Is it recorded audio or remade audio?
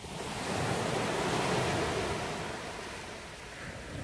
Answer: recorded